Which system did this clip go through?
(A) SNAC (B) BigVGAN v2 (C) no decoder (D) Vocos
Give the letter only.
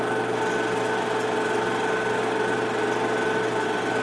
C